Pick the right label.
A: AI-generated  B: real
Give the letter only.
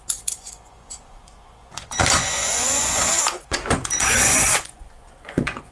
A